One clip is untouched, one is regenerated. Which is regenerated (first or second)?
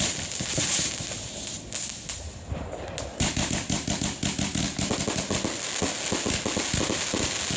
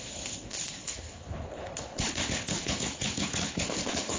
second